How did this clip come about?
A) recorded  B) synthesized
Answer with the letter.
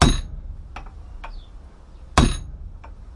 A